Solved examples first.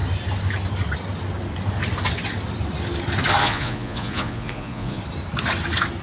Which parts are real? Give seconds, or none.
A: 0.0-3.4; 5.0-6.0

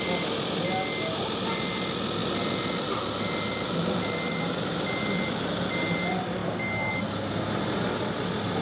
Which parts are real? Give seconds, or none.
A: 0.0-8.6

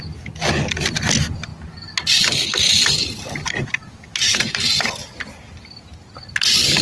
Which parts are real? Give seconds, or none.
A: 0.0-6.8